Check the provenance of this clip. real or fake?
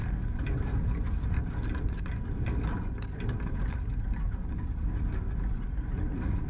real